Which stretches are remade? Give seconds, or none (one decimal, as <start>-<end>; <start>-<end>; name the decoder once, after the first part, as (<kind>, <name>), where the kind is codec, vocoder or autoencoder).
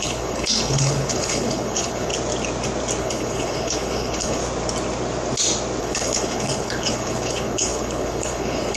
0.0-2.1 (codec, HILCodec); 3.0-4.4; 5.8-8.8